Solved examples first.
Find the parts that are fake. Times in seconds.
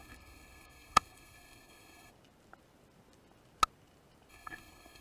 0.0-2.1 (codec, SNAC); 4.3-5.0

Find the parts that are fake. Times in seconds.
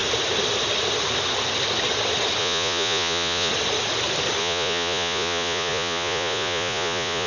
2.4-3.5 (vocoder, Vocos); 4.4-7.3